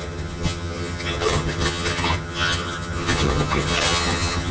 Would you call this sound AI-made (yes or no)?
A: yes